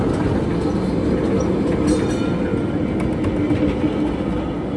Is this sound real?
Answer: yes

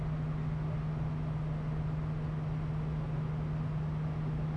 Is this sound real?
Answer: yes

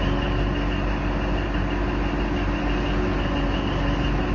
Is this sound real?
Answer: yes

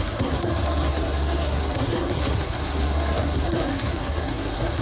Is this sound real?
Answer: no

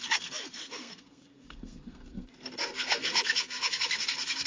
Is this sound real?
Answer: no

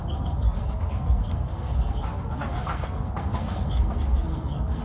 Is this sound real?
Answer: no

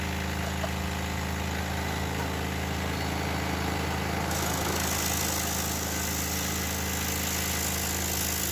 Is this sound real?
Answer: yes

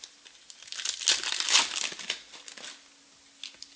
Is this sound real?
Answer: yes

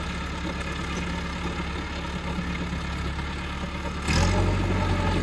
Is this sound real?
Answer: yes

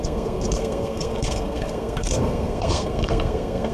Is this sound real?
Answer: no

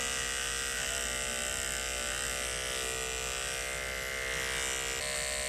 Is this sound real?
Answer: yes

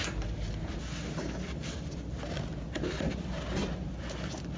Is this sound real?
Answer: yes